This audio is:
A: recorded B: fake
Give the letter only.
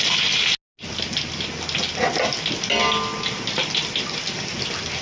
A